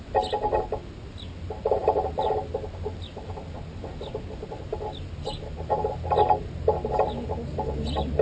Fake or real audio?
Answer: real